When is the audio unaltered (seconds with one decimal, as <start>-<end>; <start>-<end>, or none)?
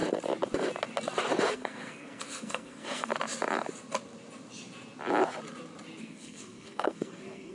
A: 0.0-1.5; 3.1-6.0